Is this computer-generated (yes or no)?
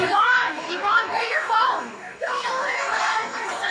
yes